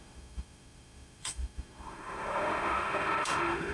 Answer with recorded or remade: remade